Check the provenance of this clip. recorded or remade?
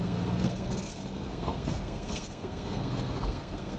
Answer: remade